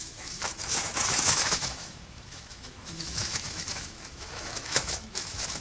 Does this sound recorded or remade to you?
remade